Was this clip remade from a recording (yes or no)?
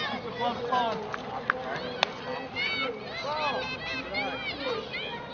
no